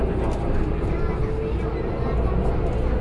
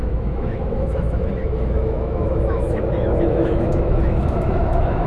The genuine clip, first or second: first